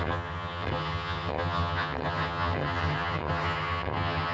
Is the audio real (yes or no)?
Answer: no